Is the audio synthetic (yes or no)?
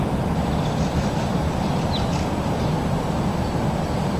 no